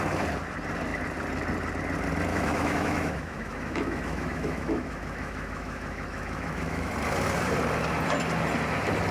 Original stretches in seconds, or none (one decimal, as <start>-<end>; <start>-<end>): 0.0-2.3; 6.9-9.1